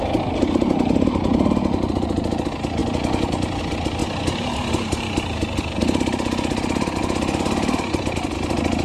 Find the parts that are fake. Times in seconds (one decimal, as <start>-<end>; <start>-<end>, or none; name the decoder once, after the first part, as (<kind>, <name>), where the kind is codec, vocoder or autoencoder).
none